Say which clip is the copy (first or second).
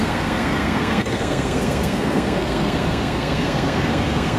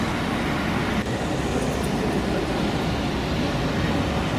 first